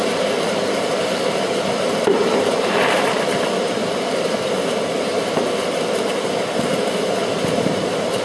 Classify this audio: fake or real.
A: fake